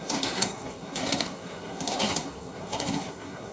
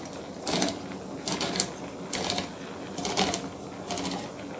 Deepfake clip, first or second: first